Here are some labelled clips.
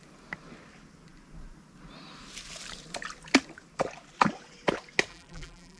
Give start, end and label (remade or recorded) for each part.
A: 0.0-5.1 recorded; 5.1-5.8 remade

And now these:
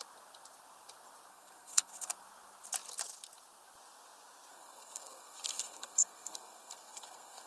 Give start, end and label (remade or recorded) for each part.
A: 0.0-1.3 recorded; 1.3-2.1 remade; 2.1-4.5 recorded; 4.5-7.5 remade

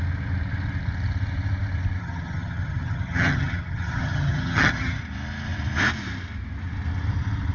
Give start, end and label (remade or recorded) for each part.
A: 0.0-2.0 recorded; 2.0-5.0 remade; 5.0-7.5 recorded

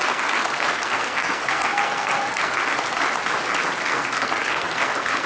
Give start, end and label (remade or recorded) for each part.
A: 0.0-2.6 remade; 2.6-3.8 recorded; 3.8-5.3 remade

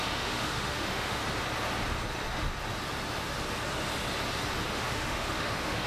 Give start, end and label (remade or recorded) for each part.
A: 0.0-1.2 remade; 1.2-4.7 recorded; 4.7-5.9 remade

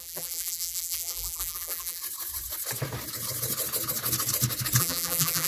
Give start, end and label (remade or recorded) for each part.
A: 0.0-2.0 remade; 2.0-4.8 recorded; 4.8-5.5 remade

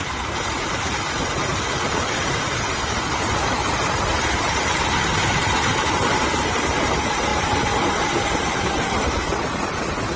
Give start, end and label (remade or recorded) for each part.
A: 0.0-1.5 remade; 1.5-2.7 recorded; 2.7-10.2 remade

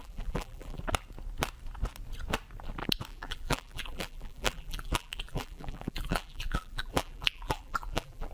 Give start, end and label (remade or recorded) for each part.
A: 0.0-0.8 remade; 0.8-3.1 recorded; 3.1-8.3 remade